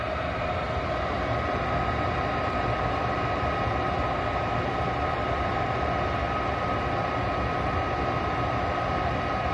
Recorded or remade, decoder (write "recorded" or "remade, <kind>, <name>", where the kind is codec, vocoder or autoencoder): recorded